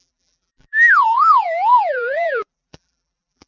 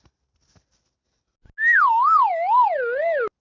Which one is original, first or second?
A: second